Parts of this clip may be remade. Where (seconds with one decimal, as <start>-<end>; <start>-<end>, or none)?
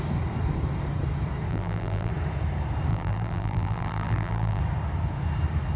1.5-2.1; 2.9-4.6